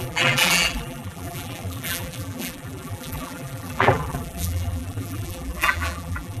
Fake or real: fake